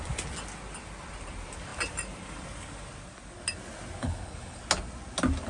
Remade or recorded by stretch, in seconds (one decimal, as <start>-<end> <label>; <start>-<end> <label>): 0.0-4.0 recorded; 4.0-4.6 remade; 4.6-5.5 recorded

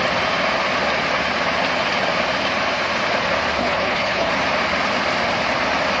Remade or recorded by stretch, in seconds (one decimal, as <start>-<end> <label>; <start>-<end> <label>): 0.0-3.6 recorded; 3.6-4.3 remade; 4.3-6.0 recorded

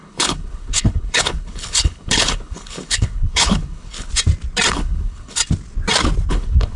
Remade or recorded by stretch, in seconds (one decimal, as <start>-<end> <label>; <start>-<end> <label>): 0.0-4.1 remade; 4.1-4.7 recorded; 4.7-5.4 remade; 5.4-6.3 recorded; 6.3-6.8 remade

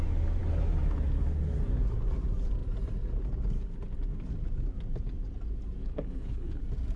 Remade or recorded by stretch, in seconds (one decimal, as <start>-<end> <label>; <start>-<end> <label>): 0.0-5.8 recorded; 5.8-6.6 remade; 6.6-7.0 recorded

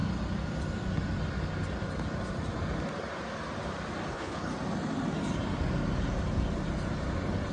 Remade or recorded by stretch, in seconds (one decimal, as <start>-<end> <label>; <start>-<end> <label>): 0.0-4.1 recorded; 4.1-4.5 remade; 4.5-7.5 recorded

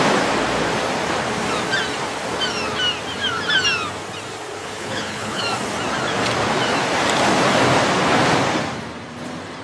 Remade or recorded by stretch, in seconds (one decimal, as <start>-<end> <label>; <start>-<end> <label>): 0.0-4.6 recorded; 4.6-5.4 remade; 5.4-9.6 recorded

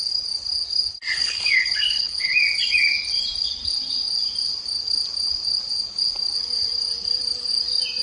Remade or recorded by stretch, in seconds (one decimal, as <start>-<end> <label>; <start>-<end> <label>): 0.0-1.2 recorded; 1.2-2.3 remade; 2.3-8.0 recorded